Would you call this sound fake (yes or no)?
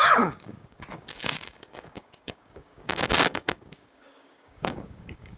yes